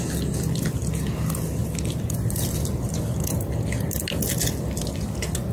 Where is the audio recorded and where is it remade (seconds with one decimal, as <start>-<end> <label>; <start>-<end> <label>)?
0.0-1.6 recorded; 1.6-3.0 remade; 3.0-5.5 recorded